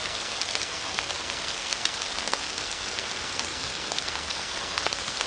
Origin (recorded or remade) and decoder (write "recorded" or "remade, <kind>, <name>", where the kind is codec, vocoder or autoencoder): remade, codec, SNAC